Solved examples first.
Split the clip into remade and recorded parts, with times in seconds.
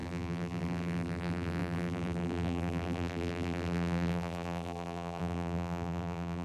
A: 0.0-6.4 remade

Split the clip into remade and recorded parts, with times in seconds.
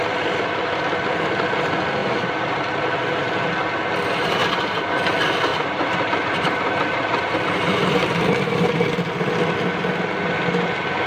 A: 0.0-2.0 recorded; 2.0-2.6 remade; 2.6-4.4 recorded; 4.4-4.9 remade; 4.9-5.5 recorded; 5.5-9.0 remade; 9.0-11.1 recorded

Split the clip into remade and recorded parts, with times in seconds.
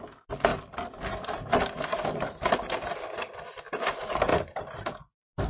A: 0.0-4.3 recorded; 4.3-5.0 remade; 5.0-5.5 recorded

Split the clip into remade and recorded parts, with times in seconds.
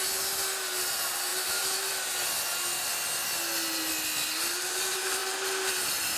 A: 0.0-1.3 recorded; 1.3-1.9 remade; 1.9-6.2 recorded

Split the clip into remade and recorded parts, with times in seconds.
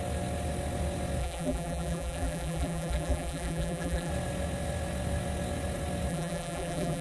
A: 0.0-1.2 recorded; 1.2-4.1 remade; 4.1-6.1 recorded; 6.1-7.0 remade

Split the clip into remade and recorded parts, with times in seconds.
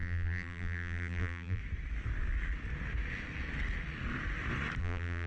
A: 0.0-1.6 remade; 1.6-4.8 recorded; 4.8-5.3 remade